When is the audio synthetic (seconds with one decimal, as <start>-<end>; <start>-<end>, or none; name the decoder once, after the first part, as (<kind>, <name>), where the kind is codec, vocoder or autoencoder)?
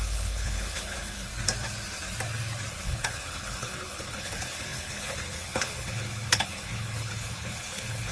0.0-1.3 (codec, HILCodec); 2.7-8.1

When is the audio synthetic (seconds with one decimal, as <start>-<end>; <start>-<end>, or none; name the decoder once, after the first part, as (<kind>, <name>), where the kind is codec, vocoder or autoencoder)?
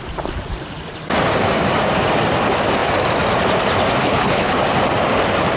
4.0-4.6 (codec, HILCodec)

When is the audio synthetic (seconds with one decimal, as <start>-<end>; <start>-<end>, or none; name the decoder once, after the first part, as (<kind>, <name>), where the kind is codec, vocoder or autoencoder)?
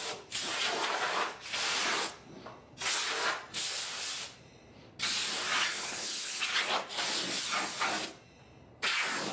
5.7-6.4 (codec, HILCodec)